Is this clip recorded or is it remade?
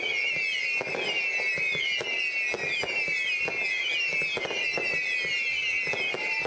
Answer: recorded